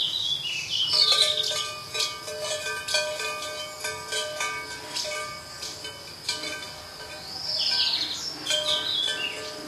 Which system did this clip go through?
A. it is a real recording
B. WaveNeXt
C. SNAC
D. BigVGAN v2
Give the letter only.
A